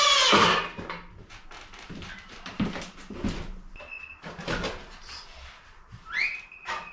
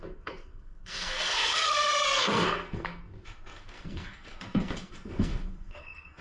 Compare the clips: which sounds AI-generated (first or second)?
second